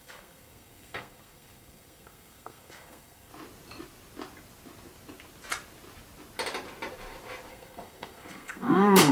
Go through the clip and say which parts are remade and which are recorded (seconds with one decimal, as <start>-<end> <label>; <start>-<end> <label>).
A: 0.0-3.3 remade; 3.3-7.5 recorded; 7.5-9.1 remade